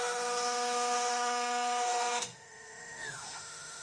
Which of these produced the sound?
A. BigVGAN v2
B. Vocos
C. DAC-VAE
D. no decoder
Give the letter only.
C